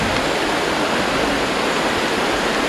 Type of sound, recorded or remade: recorded